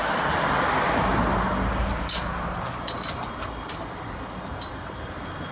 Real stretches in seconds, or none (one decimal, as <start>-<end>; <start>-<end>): 0.0-5.5